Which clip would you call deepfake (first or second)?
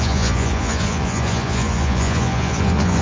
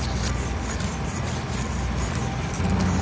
first